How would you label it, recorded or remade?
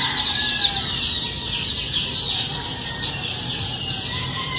recorded